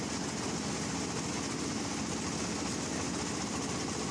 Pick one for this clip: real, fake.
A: real